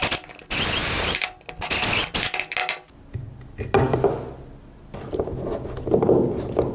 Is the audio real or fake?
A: real